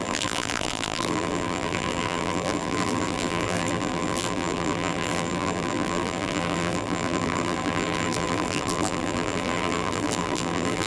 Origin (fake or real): fake